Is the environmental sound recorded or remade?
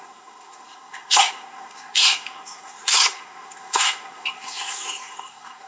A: remade